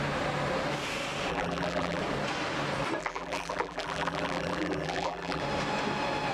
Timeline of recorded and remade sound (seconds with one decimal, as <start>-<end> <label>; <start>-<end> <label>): 0.0-1.3 recorded; 1.3-2.0 remade; 2.0-3.0 recorded; 3.0-5.4 remade; 5.4-6.3 recorded